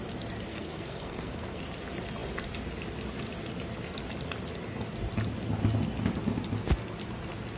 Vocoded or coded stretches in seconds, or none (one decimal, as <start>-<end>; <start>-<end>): 0.5-1.6